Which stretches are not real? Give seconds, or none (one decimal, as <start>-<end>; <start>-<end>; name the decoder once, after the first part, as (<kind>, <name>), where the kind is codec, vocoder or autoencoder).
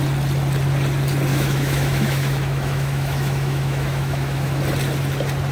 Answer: 1.3-4.6 (autoencoder, DAC-VAE)